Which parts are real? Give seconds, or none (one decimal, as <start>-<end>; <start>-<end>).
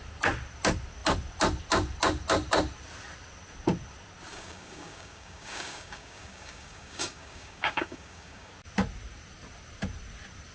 0.0-4.3; 8.5-10.5